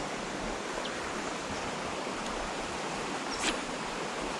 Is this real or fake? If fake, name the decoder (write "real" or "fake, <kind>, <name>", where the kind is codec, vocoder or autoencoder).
real